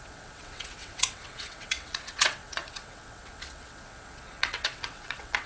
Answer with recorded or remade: remade